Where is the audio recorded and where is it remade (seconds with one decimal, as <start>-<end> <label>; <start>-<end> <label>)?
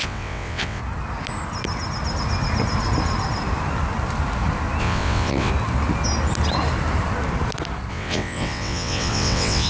0.0-0.8 remade; 0.8-4.8 recorded; 4.8-5.5 remade; 5.5-7.9 recorded; 7.9-9.7 remade